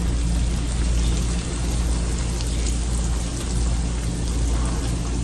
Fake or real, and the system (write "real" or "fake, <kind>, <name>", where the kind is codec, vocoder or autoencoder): real